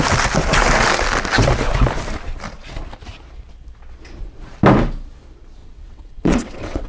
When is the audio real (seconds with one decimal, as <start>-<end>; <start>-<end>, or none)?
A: 0.0-5.6